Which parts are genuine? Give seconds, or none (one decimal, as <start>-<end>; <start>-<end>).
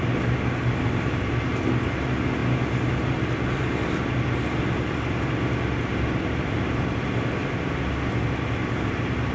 0.0-9.3